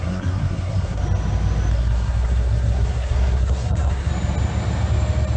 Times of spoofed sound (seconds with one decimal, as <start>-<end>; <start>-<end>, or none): 0.0-1.0; 1.7-4.1